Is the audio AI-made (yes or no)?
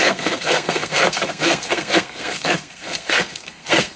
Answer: yes